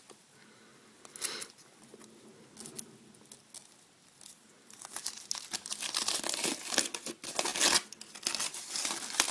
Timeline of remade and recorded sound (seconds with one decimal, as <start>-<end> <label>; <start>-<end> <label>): 0.0-9.3 recorded

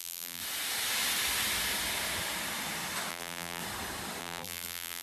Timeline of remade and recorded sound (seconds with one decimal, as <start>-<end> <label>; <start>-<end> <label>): 0.0-0.4 remade; 0.4-3.1 recorded; 3.1-3.6 remade; 3.6-4.2 recorded; 4.2-5.0 remade